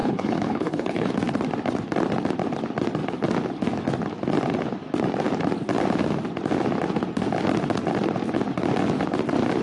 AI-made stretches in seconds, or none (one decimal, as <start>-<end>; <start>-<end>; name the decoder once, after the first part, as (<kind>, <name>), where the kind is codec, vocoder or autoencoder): 0.0-1.1 (codec, HILCodec)

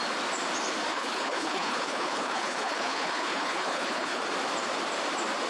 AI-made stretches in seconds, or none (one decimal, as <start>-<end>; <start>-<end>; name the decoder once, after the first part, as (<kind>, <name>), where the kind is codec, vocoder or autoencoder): 0.9-4.2 (codec, HILCodec)

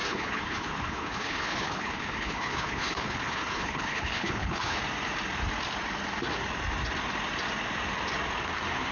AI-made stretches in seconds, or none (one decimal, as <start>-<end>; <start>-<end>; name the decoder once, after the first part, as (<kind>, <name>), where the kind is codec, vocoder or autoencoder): 0.0-4.8 (codec, HILCodec)

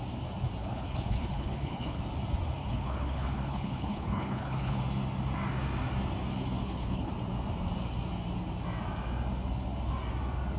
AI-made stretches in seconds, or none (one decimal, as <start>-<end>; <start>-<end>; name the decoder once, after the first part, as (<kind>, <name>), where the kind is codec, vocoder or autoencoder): 0.6-2.0 (codec, HILCodec); 2.6-4.8; 6.6-7.1